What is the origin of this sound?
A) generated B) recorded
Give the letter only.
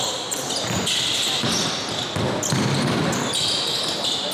B